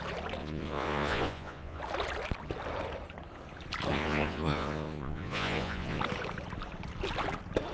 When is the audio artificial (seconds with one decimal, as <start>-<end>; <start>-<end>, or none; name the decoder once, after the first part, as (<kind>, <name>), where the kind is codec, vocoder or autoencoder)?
0.4-1.8 (vocoder, Vocos); 3.9-6.0